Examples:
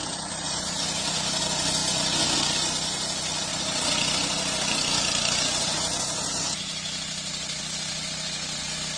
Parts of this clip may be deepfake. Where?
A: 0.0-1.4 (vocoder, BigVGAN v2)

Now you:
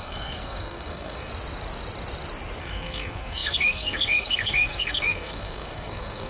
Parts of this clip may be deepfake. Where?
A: 0.0-1.3 (codec, SNAC); 2.6-6.3